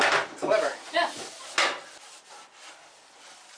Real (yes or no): yes